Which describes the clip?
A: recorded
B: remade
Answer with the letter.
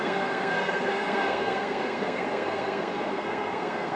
B